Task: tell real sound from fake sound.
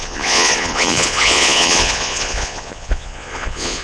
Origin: fake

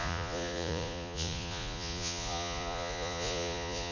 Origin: fake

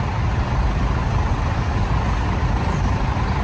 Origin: real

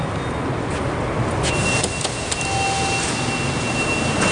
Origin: real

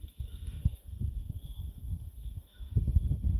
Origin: fake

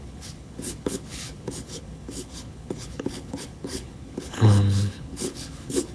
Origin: fake